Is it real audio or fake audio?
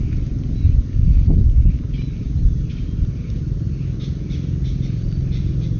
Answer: real